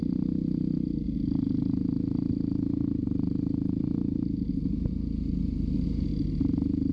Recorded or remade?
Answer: recorded